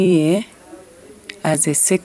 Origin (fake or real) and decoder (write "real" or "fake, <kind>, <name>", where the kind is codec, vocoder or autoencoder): fake, vocoder, BigVGAN v2